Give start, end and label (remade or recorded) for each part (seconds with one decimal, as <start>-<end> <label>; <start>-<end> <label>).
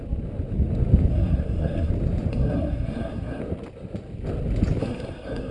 0.0-1.1 recorded; 1.1-1.9 remade; 1.9-2.3 recorded; 2.3-3.4 remade; 3.4-4.8 recorded; 4.8-5.5 remade